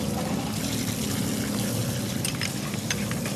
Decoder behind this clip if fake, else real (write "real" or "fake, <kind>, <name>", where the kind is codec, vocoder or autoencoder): real